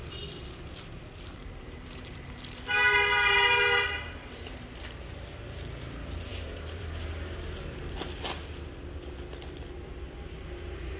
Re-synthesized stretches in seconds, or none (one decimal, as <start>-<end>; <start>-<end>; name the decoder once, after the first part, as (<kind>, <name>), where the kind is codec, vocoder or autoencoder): 1.3-4.8 (vocoder, BigVGAN v2); 6.3-7.1